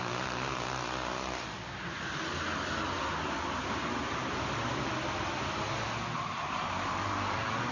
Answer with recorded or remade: recorded